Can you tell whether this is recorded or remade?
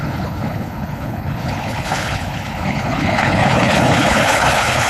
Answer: remade